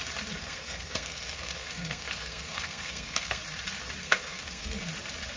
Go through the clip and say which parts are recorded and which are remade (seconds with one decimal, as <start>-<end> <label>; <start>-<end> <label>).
0.0-0.4 recorded; 0.4-3.4 remade; 3.4-4.0 recorded; 4.0-4.8 remade; 4.8-5.4 recorded